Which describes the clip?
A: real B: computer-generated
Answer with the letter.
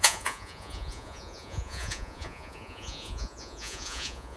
B